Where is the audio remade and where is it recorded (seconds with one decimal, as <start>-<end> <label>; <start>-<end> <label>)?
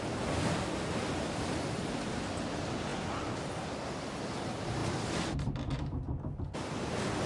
0.0-7.3 recorded